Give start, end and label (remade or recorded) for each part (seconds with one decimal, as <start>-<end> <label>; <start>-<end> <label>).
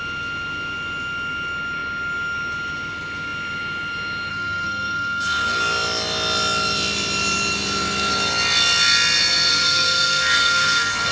0.0-4.3 recorded; 4.3-5.6 remade; 5.6-9.5 recorded; 9.5-11.1 remade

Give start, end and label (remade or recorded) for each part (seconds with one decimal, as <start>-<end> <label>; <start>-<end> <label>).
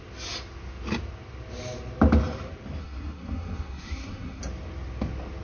0.0-2.8 recorded; 2.8-4.4 remade; 4.4-5.4 recorded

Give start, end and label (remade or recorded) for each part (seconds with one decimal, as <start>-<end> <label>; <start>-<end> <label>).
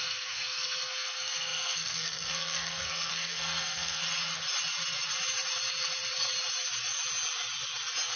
0.0-4.0 remade; 4.0-8.2 recorded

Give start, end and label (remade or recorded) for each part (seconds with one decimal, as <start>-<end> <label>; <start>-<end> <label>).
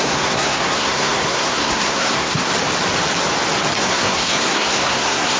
0.0-2.5 remade; 2.5-3.8 recorded; 3.8-5.4 remade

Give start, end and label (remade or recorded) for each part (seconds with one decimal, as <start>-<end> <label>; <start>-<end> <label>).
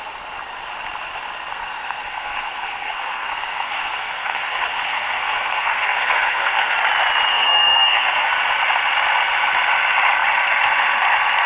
0.0-1.5 recorded; 1.5-6.7 remade; 6.7-7.3 recorded; 7.3-8.3 remade; 8.3-11.5 recorded